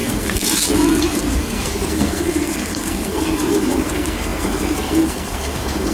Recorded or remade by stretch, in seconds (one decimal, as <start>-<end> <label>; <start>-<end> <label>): 0.0-5.9 remade